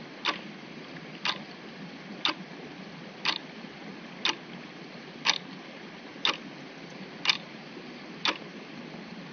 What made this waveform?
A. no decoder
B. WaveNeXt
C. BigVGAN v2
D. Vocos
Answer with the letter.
A